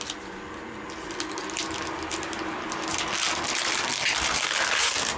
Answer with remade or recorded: recorded